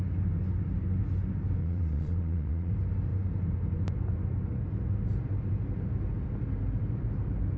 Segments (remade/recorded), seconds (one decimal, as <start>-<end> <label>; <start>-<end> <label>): 0.0-1.6 recorded; 1.6-2.7 remade; 2.7-7.6 recorded